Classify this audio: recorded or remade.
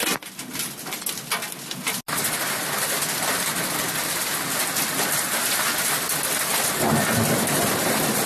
recorded